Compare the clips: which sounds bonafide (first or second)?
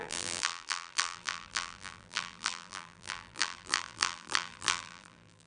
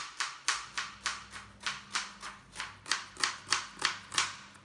second